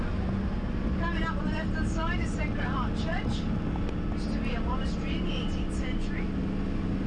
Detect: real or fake real